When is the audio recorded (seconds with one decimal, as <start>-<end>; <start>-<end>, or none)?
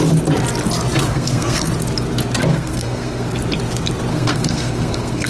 0.0-1.1; 1.7-2.5; 3.4-4.1